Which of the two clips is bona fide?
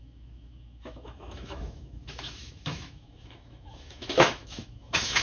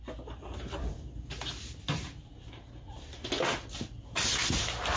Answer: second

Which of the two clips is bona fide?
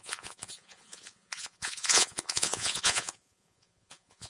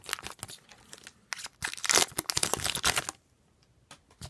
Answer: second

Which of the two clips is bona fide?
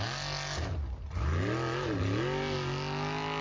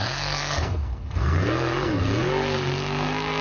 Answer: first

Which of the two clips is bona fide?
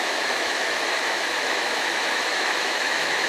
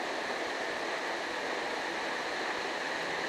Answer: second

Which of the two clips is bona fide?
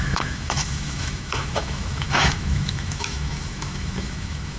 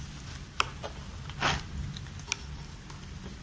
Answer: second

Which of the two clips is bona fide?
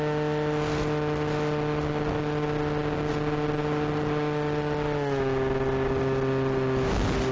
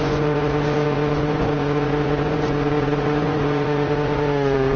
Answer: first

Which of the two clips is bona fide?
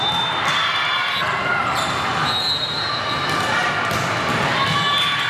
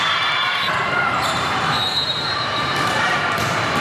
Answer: first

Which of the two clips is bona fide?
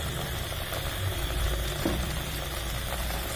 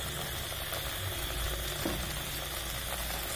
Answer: second